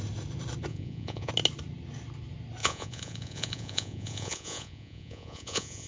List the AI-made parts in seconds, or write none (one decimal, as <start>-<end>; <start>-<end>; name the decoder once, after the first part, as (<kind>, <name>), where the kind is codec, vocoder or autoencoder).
0.7-1.3 (vocoder, Vocos); 2.6-5.9